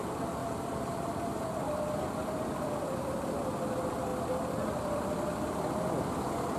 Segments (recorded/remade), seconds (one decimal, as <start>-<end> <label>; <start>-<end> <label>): 0.0-0.4 recorded; 0.4-3.1 remade; 3.1-4.1 recorded; 4.1-6.6 remade